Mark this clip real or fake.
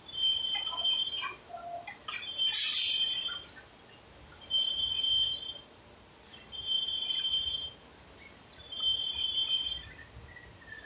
real